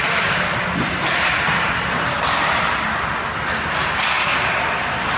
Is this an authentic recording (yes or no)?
yes